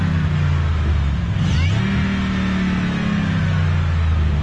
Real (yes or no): yes